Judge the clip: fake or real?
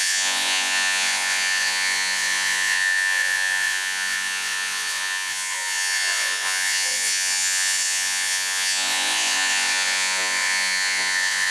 fake